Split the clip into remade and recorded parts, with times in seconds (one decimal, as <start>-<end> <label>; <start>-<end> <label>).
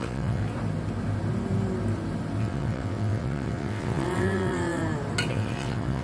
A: 0.0-0.4 remade; 0.4-2.4 recorded; 2.4-4.8 remade; 4.8-5.3 recorded; 5.3-6.0 remade